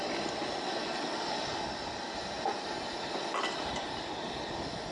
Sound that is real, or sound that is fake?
real